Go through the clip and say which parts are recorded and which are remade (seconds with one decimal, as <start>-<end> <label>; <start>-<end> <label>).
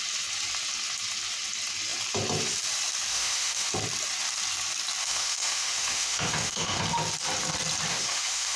0.0-3.1 recorded; 3.1-3.7 remade; 3.7-5.0 recorded; 5.0-6.8 remade; 6.8-7.9 recorded; 7.9-8.6 remade